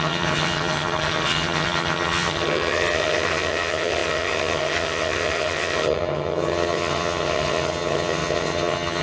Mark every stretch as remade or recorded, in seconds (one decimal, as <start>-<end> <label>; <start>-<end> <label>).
0.0-9.0 remade